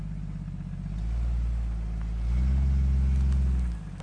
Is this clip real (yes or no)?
yes